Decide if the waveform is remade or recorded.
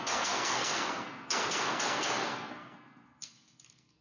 remade